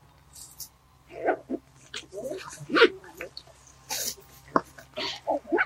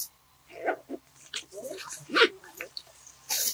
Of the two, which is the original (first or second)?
first